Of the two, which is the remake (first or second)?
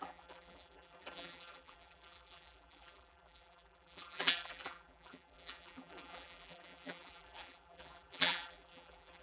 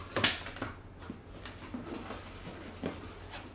first